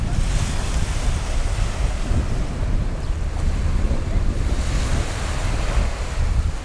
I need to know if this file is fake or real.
real